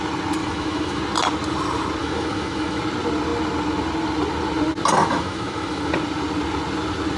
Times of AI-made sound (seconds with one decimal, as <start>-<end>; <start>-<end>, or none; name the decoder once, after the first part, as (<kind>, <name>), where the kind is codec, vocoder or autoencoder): 0.4-1.0 (autoencoder, DAC-VAE); 2.0-2.8; 5.0-5.9